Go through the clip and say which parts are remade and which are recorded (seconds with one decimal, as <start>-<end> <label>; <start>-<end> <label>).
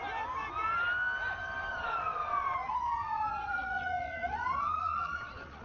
0.0-1.7 recorded; 1.7-5.6 remade